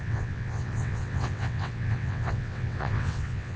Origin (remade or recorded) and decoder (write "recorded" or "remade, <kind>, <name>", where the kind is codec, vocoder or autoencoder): remade, vocoder, WaveNeXt